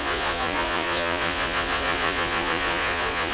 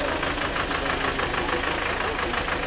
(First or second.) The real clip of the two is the second